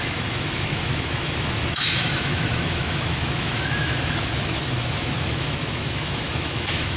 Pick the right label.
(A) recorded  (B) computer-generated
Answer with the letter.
B